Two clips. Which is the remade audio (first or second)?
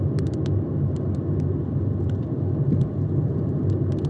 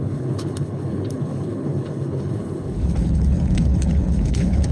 second